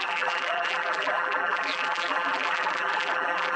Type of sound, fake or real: fake